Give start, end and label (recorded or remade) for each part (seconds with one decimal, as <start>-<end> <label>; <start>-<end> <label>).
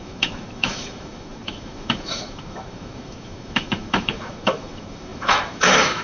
0.0-6.0 remade